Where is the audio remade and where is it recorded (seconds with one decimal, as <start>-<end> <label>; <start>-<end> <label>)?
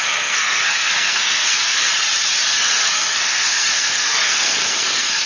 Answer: 0.0-1.9 remade; 1.9-2.5 recorded; 2.5-5.3 remade